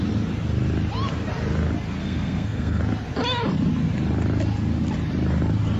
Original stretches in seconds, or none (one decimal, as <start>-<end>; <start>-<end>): 0.0-2.0; 2.8-5.8